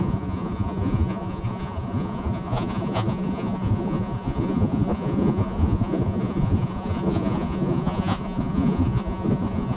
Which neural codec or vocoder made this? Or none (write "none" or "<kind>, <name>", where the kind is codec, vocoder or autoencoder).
vocoder, Vocos